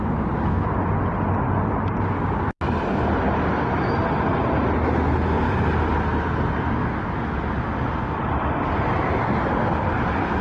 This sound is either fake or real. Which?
real